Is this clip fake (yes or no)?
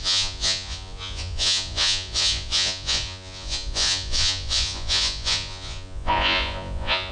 yes